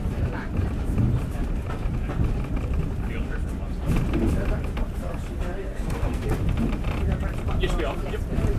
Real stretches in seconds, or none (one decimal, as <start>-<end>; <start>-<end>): 0.0-5.6; 6.3-8.6